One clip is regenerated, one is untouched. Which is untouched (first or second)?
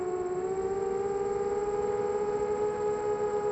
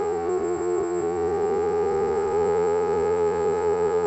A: first